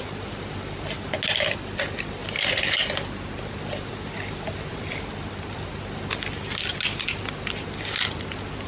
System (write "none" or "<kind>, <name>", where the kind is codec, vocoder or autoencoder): none